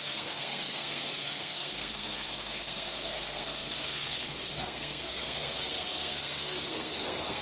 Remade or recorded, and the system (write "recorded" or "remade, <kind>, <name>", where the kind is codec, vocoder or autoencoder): remade, codec, SNAC